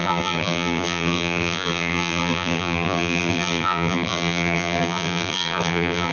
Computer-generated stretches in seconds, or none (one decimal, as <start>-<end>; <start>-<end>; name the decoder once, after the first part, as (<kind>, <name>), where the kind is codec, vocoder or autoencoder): 0.0-6.1 (vocoder, BigVGAN v2)